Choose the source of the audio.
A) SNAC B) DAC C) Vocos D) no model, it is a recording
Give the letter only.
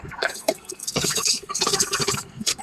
A